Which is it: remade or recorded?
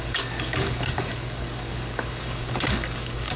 remade